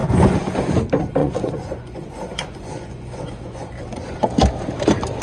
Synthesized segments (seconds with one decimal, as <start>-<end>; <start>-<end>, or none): 0.0-0.7; 1.2-4.3